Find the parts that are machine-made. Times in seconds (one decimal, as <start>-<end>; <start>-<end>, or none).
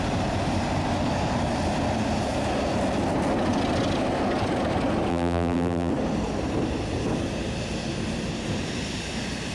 5.1-5.9